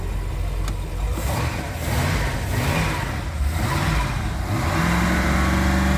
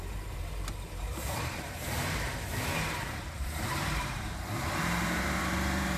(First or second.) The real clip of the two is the first